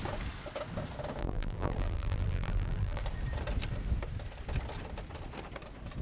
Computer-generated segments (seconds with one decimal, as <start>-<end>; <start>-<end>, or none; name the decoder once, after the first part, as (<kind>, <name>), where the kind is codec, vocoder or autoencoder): 1.2-3.0 (vocoder, BigVGAN v2)